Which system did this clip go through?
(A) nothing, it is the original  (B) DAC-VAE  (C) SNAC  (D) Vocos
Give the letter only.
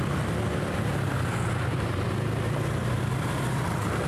A